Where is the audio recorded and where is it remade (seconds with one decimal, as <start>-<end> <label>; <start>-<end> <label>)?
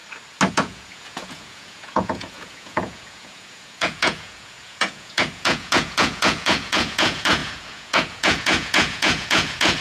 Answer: 0.0-0.5 recorded; 0.5-9.8 remade